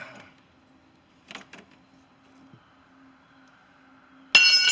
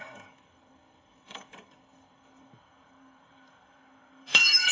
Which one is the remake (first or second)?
second